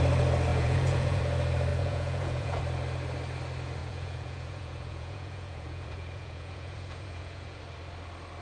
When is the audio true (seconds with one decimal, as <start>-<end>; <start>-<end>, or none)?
0.0-0.5; 1.2-1.7; 2.6-3.8; 7.6-8.4